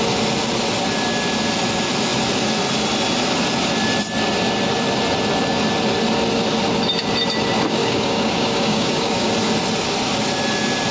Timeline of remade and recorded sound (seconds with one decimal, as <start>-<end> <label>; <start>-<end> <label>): 0.0-7.8 recorded; 7.8-9.3 remade; 9.3-10.9 recorded